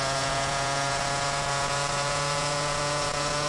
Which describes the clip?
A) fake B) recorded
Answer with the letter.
A